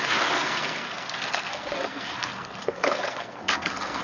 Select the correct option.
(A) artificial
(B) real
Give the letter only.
A